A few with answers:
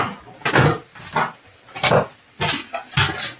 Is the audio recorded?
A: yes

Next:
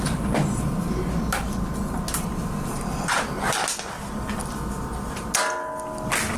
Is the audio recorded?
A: yes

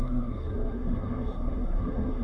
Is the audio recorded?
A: no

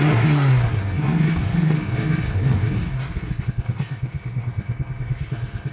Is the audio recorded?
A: no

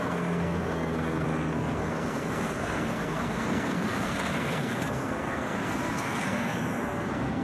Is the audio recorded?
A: no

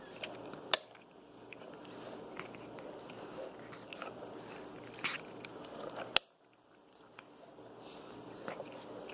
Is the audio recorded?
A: yes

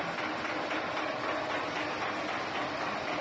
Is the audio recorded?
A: yes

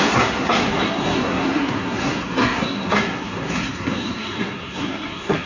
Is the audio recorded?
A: no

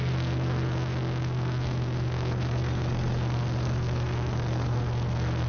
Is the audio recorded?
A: no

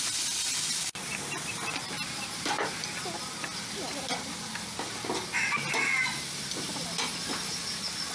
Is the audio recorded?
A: yes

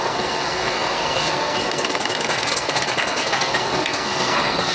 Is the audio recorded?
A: no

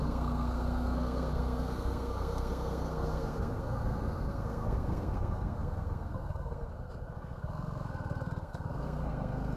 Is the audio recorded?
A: no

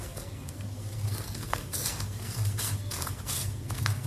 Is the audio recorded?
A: no